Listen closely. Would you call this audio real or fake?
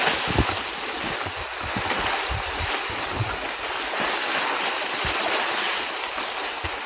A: real